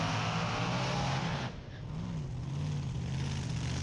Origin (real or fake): real